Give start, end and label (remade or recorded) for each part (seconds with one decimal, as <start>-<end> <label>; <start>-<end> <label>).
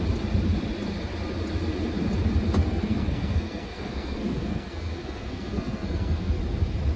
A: 0.0-2.6 recorded; 2.6-6.4 remade; 6.4-7.0 recorded